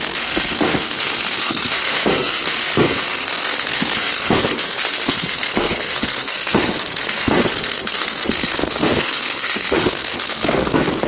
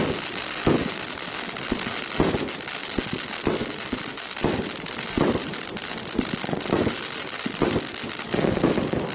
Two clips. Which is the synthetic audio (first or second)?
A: first